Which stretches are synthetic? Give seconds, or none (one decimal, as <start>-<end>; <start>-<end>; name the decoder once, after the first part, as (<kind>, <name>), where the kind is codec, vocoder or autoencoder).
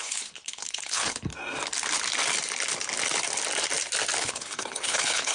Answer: 0.0-1.3 (codec, HILCodec); 4.2-5.3